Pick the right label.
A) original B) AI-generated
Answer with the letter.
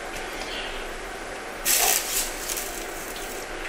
A